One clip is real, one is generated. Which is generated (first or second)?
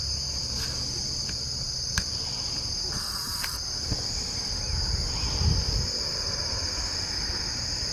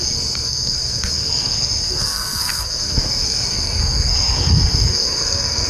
second